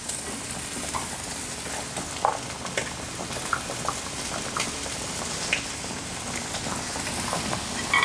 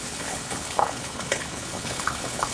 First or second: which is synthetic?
second